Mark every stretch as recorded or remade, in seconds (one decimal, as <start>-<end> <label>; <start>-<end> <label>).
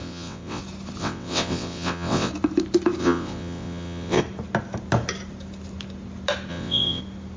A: 0.0-0.6 remade; 0.6-1.0 recorded; 1.0-2.3 remade; 2.3-3.0 recorded; 3.0-4.2 remade; 4.2-6.5 recorded; 6.5-7.0 remade; 7.0-7.4 recorded